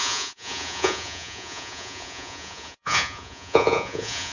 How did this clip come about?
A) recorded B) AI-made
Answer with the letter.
B